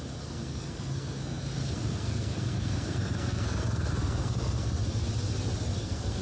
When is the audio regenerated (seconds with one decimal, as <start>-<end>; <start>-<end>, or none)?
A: 0.0-4.8; 5.8-6.2